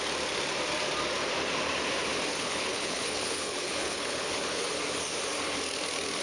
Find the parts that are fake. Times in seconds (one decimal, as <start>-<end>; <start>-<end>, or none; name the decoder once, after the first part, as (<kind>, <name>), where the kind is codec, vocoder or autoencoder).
2.3-4.6 (codec, HILCodec)